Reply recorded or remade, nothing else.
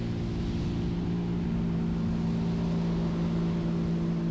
recorded